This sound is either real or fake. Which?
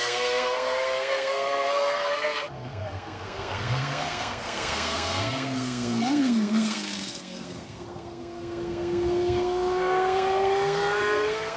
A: fake